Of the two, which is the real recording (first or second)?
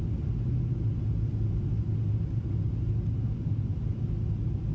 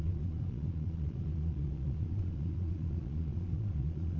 first